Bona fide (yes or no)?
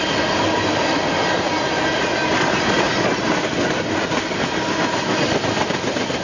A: yes